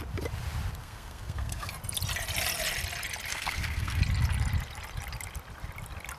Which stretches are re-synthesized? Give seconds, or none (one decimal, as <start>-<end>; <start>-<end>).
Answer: 0.8-1.7; 3.3-4.0